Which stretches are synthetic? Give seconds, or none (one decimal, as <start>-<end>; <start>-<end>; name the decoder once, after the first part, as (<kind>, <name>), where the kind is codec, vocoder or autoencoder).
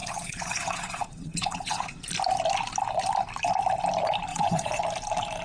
0.0-2.0 (vocoder, Vocos); 4.3-4.8